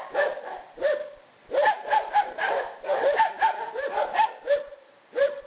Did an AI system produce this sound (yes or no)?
yes